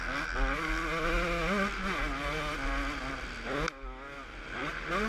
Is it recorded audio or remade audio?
recorded